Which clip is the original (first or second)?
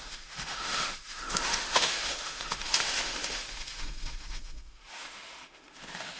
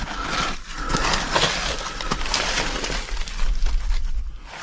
second